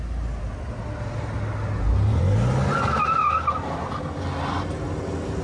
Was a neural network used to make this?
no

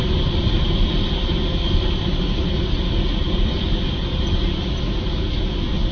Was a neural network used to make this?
no